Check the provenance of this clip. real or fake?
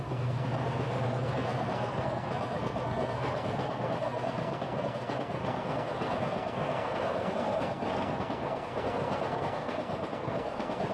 fake